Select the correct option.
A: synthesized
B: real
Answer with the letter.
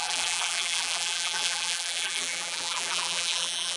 A